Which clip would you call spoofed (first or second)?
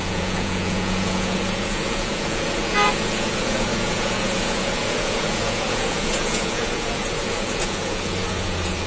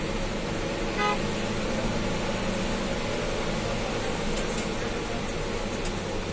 first